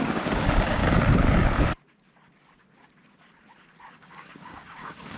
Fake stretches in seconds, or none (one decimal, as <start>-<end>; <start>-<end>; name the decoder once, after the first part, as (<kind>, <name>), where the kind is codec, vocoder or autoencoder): 0.0-0.8 (codec, DAC); 3.9-5.2